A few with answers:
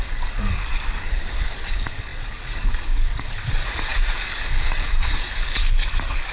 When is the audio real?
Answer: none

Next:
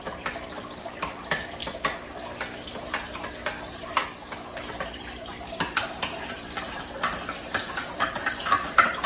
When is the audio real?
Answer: 1.6-2.9; 4.0-4.6